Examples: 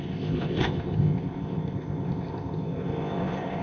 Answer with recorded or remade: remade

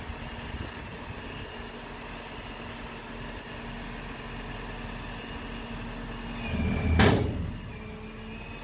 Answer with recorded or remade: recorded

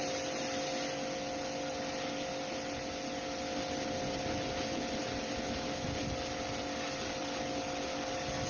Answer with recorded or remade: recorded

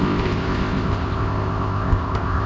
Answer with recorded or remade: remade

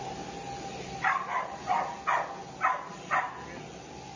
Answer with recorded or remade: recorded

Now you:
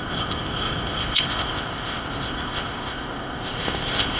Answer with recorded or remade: remade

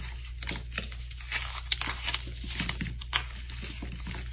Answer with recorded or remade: recorded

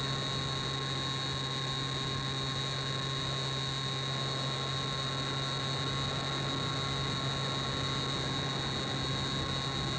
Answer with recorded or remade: recorded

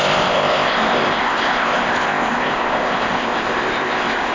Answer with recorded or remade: remade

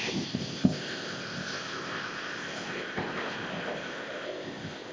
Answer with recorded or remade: remade